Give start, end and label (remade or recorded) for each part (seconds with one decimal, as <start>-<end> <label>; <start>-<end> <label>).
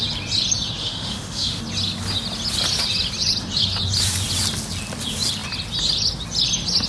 0.0-0.8 recorded; 0.8-1.6 remade; 1.6-6.9 recorded